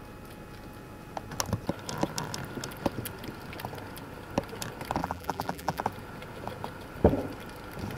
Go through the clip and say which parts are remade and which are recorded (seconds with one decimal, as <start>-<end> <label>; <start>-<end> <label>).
0.0-5.0 recorded; 5.0-5.8 remade; 5.8-8.0 recorded